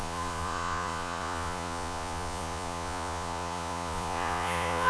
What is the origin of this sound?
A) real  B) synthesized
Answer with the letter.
B